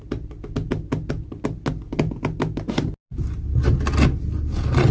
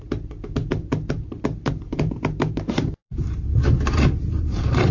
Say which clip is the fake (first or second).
second